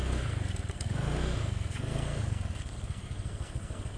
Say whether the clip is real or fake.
fake